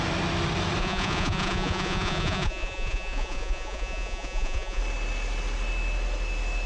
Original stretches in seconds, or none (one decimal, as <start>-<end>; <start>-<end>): 0.0-0.8; 4.8-6.7